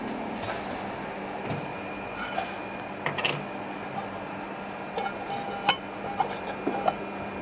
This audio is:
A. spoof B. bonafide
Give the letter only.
B